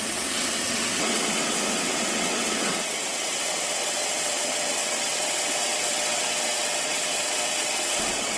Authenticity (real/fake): fake